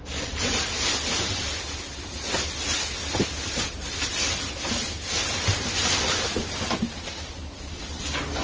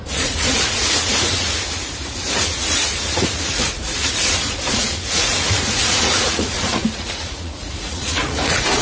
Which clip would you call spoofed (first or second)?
second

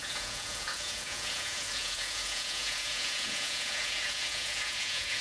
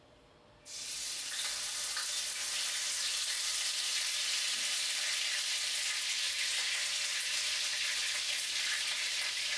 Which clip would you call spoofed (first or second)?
first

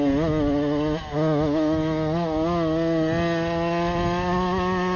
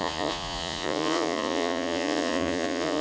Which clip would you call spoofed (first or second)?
second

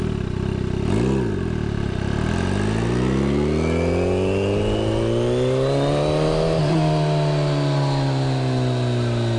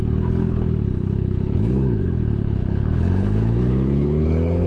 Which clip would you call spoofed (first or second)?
second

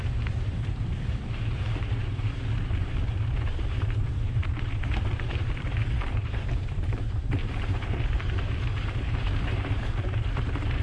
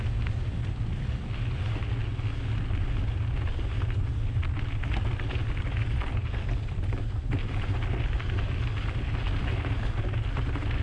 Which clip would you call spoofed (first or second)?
first